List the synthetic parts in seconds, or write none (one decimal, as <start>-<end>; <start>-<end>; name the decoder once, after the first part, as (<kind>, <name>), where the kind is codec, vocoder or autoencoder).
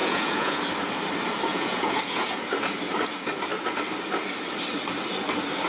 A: 0.0-0.6 (vocoder, Vocos); 1.5-2.4